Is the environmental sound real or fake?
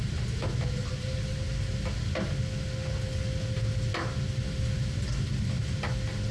real